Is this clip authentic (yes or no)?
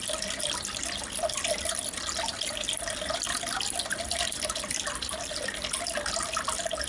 yes